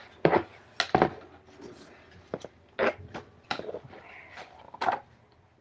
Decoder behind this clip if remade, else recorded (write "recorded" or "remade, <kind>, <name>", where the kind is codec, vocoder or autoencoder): recorded